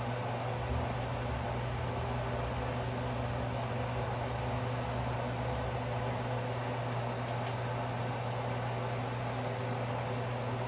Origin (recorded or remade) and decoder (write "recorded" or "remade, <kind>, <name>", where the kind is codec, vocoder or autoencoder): recorded